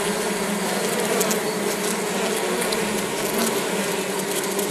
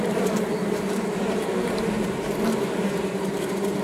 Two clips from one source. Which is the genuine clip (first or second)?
first